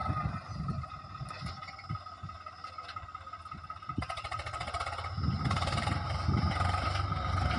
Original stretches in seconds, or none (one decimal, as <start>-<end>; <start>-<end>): 0.0-7.6